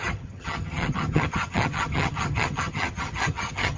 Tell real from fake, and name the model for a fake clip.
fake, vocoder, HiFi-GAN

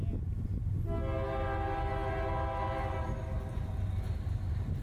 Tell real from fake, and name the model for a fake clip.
real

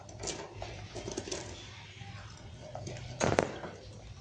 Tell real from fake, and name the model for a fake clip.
real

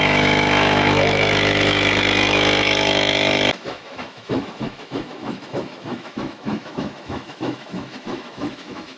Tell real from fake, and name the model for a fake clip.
fake, autoencoder, DAC-VAE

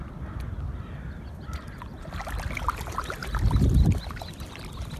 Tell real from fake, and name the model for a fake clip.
fake, vocoder, BigVGAN v2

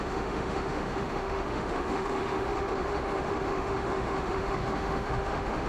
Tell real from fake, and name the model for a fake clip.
fake, autoencoder, DAC-VAE